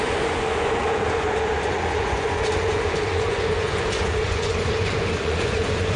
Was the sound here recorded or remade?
remade